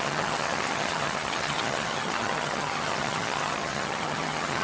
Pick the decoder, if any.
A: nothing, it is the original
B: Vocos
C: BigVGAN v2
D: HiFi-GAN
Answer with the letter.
D